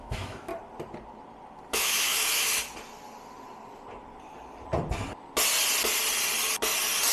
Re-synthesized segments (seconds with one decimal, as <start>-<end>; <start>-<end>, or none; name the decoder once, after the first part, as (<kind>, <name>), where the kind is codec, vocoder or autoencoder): 0.0-0.5 (autoencoder, DAC-VAE); 1.7-2.5